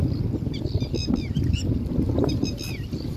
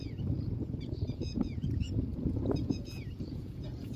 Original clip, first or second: first